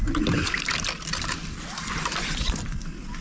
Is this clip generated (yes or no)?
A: no